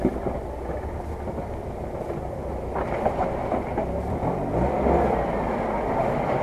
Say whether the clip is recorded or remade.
remade